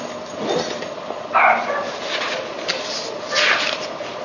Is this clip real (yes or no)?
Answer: yes